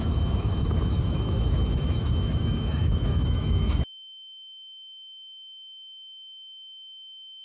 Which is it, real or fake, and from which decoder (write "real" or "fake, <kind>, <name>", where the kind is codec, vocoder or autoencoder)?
fake, autoencoder, DAC-VAE